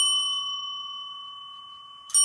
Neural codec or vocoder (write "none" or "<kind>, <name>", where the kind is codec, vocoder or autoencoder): none